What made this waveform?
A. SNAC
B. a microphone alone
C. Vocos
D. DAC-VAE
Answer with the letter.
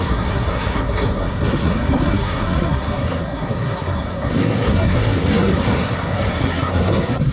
A